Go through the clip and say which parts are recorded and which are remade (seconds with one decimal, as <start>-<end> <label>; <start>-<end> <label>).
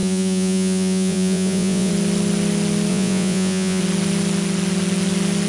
0.0-1.9 remade; 1.9-2.9 recorded; 2.9-3.8 remade; 3.8-5.5 recorded